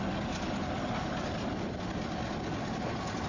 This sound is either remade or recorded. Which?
recorded